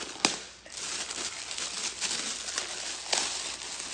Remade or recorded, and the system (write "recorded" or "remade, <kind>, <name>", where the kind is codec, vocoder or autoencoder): recorded